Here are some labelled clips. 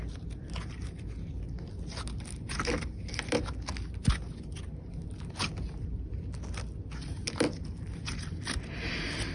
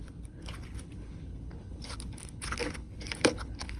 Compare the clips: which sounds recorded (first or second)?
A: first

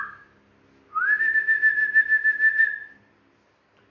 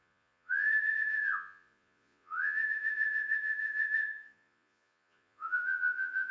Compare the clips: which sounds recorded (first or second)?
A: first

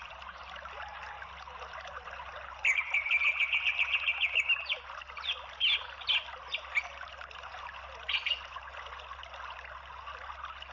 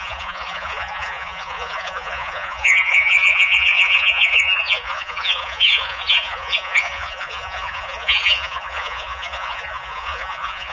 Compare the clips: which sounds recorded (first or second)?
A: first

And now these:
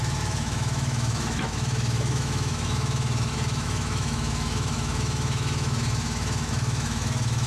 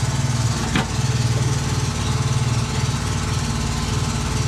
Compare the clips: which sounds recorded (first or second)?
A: second